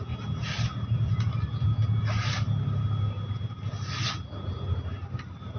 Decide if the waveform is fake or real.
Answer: real